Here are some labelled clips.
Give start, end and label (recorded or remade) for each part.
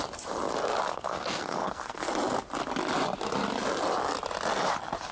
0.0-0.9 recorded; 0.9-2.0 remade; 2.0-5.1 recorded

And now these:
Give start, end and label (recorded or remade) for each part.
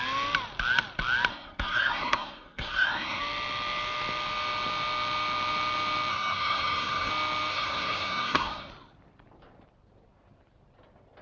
0.0-1.3 recorded; 1.3-3.2 remade; 3.2-6.1 recorded; 6.1-7.1 remade; 7.1-7.5 recorded; 7.5-8.7 remade; 8.7-11.2 recorded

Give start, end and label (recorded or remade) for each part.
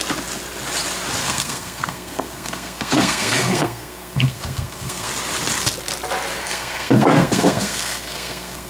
0.0-1.2 recorded; 1.2-5.1 remade; 5.1-6.4 recorded; 6.4-8.7 remade